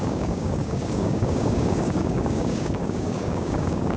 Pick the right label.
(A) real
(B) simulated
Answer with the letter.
B